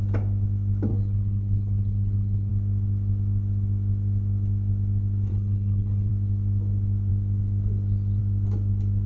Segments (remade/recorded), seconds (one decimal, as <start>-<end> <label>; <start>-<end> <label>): 0.0-0.9 recorded; 0.9-2.5 remade; 2.5-5.3 recorded; 5.3-6.1 remade; 6.1-9.1 recorded